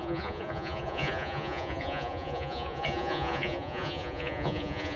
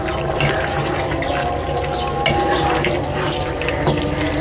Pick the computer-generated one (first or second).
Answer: first